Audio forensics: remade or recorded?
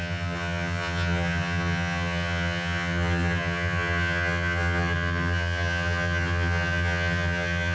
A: remade